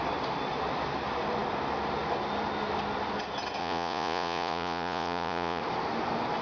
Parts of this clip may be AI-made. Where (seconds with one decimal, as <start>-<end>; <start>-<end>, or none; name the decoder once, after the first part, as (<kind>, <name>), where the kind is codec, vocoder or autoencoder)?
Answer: 3.6-5.6 (vocoder, Vocos)

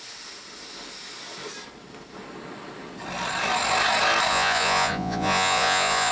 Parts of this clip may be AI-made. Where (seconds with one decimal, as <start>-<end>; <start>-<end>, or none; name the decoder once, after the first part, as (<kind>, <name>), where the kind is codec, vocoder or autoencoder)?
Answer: 4.3-6.1 (vocoder, Vocos)

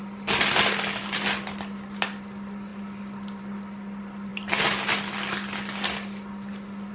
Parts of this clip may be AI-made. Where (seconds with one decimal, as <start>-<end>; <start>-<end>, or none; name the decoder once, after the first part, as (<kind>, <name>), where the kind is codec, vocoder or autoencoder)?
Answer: none

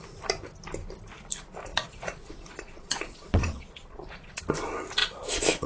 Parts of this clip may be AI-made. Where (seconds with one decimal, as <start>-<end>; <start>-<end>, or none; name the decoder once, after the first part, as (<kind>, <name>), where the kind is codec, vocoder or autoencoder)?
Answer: 1.7-4.4 (vocoder, Vocos); 5.0-5.7